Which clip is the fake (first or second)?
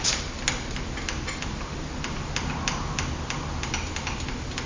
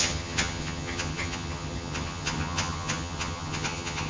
second